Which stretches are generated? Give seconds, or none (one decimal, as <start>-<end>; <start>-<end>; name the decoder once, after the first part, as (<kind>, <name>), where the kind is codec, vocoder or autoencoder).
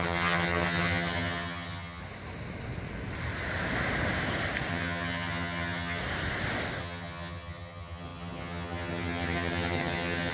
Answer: 0.0-2.0 (vocoder, HiFi-GAN); 4.7-6.0; 6.8-10.3